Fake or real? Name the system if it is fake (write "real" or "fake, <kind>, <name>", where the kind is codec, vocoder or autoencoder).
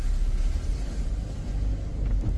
real